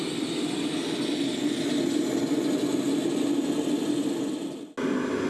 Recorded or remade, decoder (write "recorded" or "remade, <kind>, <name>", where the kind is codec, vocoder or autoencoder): recorded